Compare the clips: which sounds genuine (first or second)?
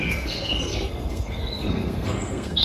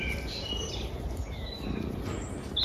second